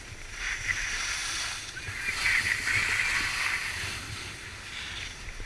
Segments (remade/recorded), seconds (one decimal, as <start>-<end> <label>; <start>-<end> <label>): 0.0-5.5 recorded